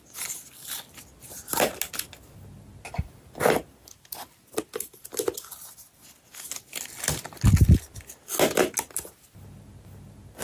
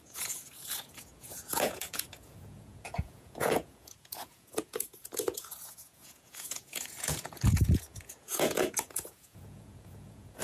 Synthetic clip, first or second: second